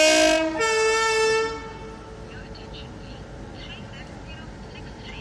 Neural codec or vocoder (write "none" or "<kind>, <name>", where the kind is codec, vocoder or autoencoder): none